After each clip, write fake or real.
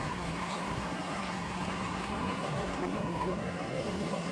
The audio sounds fake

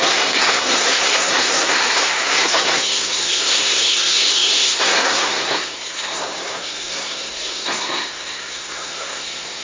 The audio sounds fake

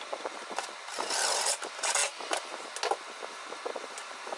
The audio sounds real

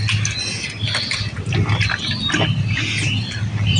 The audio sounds real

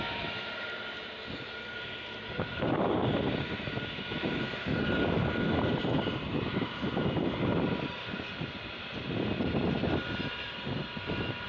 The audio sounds real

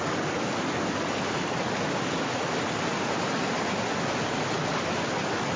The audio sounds real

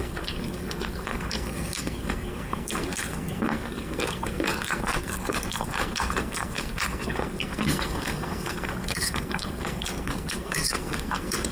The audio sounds fake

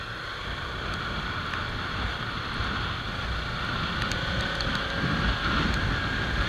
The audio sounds real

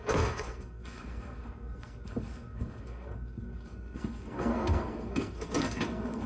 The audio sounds fake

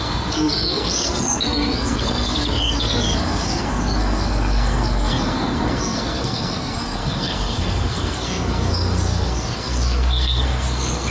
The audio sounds fake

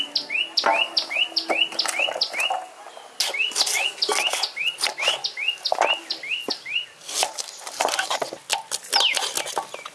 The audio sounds real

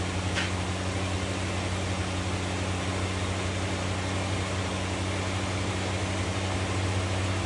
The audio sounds real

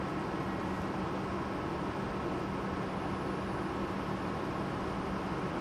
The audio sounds real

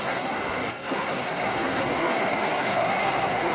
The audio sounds fake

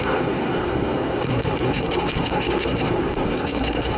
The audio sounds fake